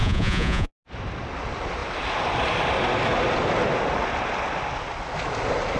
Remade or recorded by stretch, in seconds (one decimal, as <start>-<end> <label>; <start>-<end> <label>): 0.0-0.7 remade; 0.7-5.8 recorded